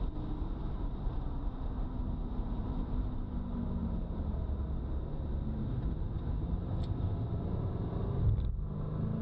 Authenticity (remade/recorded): recorded